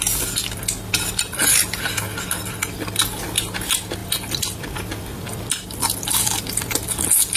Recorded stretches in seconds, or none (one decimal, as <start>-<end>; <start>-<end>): 0.0-7.4